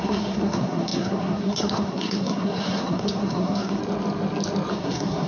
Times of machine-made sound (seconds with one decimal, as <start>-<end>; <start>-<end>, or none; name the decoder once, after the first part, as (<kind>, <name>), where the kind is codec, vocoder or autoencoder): 0.0-3.8 (codec, SNAC); 4.7-5.3